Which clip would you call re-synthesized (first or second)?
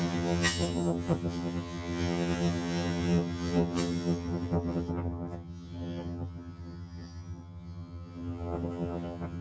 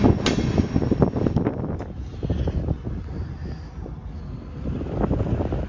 first